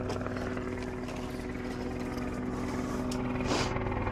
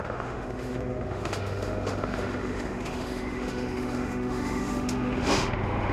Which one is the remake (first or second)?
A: second